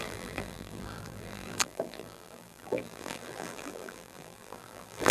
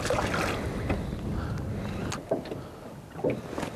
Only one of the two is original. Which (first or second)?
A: second